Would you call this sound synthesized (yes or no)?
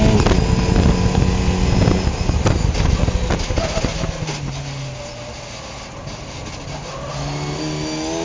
no